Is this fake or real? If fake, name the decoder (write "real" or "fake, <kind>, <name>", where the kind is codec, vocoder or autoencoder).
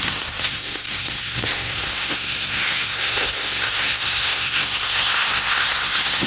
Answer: fake, codec, SNAC